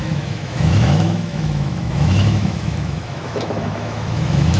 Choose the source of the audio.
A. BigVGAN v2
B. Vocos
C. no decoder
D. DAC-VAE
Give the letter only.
D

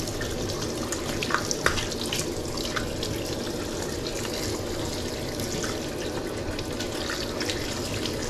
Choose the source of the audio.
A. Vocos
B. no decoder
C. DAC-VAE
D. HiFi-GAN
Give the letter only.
B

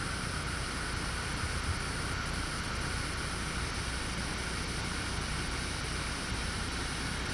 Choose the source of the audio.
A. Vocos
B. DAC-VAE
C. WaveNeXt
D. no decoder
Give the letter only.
D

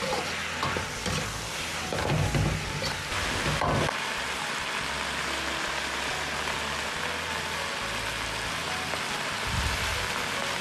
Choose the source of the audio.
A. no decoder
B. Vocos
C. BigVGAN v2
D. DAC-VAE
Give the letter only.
A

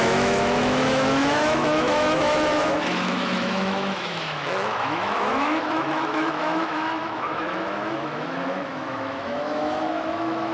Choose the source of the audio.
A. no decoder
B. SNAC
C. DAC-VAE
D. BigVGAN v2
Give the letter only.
C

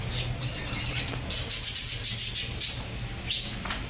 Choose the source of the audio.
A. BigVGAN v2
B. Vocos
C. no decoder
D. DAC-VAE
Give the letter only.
C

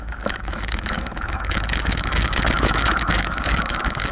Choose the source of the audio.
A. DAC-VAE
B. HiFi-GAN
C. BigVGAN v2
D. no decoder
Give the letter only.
A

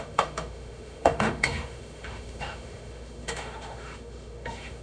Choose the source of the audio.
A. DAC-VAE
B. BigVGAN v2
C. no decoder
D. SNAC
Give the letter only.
A